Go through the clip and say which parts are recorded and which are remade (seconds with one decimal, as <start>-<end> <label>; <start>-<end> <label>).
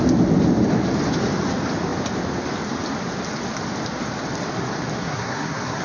0.0-5.0 recorded; 5.0-5.8 remade